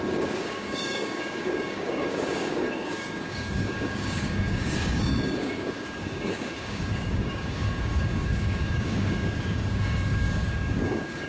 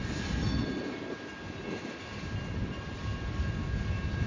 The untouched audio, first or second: second